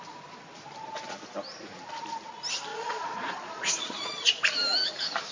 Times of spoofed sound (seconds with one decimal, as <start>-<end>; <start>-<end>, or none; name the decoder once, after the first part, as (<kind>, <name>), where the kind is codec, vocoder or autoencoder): 2.7-4.4 (vocoder, Vocos)